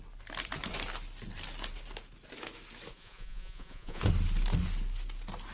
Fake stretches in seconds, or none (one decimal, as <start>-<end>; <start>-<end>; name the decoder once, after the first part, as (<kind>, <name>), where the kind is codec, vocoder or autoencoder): 2.9-4.0 (vocoder, Vocos)